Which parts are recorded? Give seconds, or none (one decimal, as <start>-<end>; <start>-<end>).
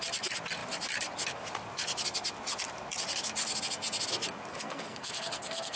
0.0-4.5